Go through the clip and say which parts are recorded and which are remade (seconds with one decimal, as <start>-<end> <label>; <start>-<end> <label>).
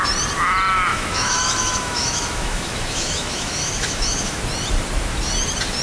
0.0-0.9 recorded; 0.9-4.4 remade; 4.4-5.8 recorded